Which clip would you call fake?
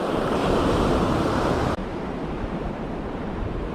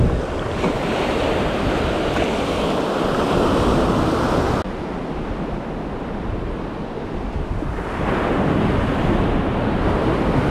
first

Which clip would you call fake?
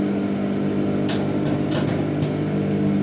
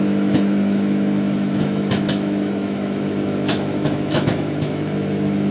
second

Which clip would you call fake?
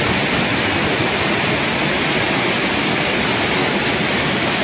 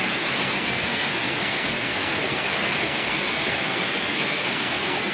second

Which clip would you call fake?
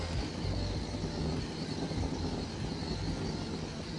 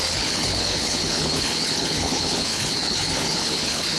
second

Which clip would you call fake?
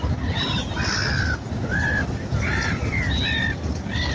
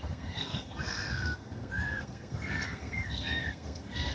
second